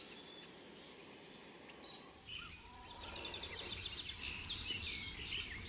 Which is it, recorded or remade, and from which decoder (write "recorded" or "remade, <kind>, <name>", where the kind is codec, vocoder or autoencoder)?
remade, vocoder, BigVGAN v2